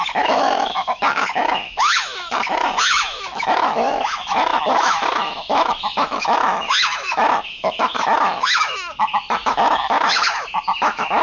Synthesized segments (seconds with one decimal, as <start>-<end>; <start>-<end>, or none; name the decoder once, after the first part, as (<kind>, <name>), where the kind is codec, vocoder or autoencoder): 0.0-11.2 (autoencoder, DAC-VAE)